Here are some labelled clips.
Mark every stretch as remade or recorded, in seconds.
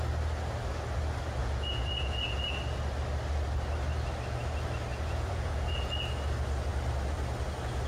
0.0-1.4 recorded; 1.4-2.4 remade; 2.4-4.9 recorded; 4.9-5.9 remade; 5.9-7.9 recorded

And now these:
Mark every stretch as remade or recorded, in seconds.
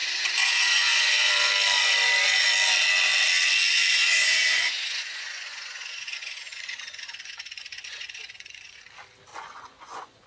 0.0-1.3 remade; 1.3-3.9 recorded; 3.9-8.8 remade; 8.8-9.3 recorded; 9.3-10.3 remade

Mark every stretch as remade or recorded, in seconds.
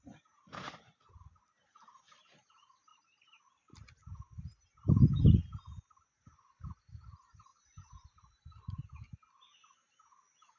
0.0-7.5 recorded; 7.5-8.8 remade; 8.8-10.6 recorded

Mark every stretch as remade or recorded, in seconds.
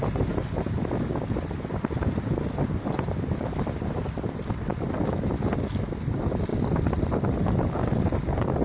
0.0-8.6 recorded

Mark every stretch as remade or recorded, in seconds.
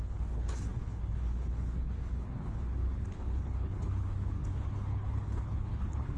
0.0-6.2 remade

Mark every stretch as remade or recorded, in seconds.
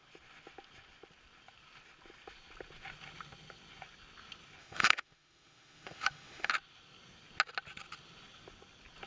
0.0-4.6 recorded; 4.6-6.5 remade; 6.5-9.1 recorded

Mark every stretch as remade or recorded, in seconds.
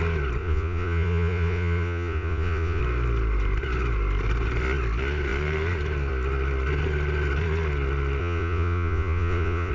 0.0-0.4 recorded; 0.4-2.8 remade; 2.8-8.2 recorded; 8.2-9.7 remade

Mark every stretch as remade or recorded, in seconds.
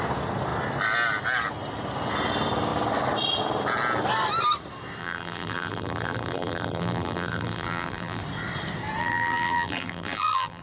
0.0-5.0 recorded; 5.0-8.2 remade; 8.2-9.0 recorded; 9.0-10.6 remade